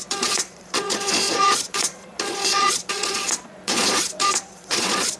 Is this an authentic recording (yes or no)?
no